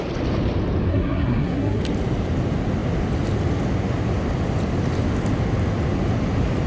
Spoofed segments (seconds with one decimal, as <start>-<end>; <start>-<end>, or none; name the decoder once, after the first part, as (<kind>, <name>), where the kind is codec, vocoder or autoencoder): 0.9-1.8 (codec, SNAC)